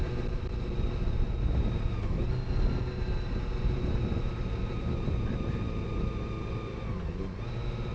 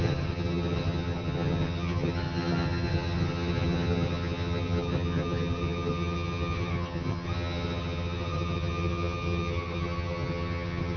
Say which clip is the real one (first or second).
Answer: first